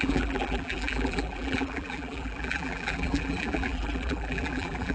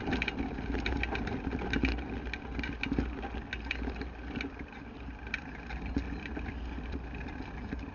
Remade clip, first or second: first